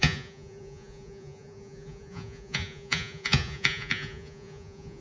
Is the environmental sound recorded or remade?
remade